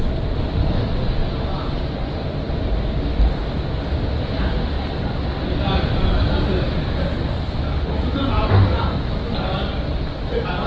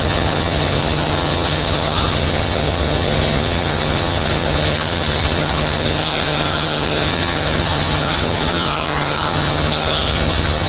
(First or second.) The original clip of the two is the first